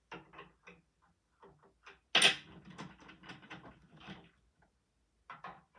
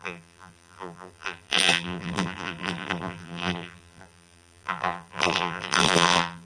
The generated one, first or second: second